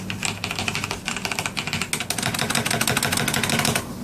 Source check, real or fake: real